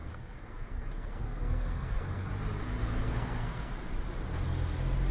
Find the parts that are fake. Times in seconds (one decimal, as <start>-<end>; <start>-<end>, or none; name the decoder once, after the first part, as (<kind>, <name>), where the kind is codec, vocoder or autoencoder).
0.0-2.3 (codec, SNAC); 2.8-3.7